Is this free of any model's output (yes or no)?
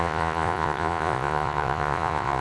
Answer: no